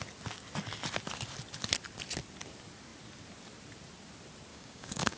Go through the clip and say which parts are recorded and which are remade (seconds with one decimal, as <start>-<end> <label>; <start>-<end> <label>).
0.0-4.5 recorded; 4.5-5.2 remade

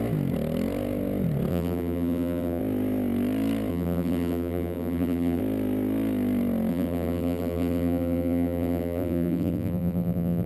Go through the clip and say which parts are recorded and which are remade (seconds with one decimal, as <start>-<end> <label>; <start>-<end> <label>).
0.0-1.5 recorded; 1.5-2.6 remade; 2.6-3.7 recorded; 3.7-5.4 remade; 5.4-6.7 recorded; 6.7-10.5 remade

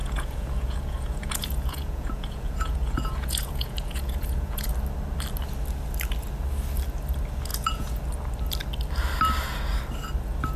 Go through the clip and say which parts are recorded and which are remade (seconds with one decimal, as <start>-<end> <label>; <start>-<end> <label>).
0.0-4.7 remade; 4.7-7.5 recorded; 7.5-8.0 remade; 8.0-10.6 recorded